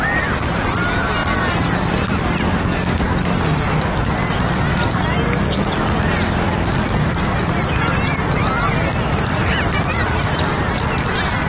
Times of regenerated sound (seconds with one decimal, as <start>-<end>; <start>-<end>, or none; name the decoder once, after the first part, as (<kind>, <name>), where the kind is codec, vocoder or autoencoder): 9.4-10.7 (vocoder, BigVGAN v2)